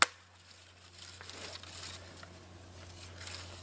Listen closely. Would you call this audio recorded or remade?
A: recorded